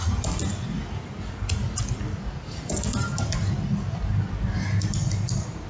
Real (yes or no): yes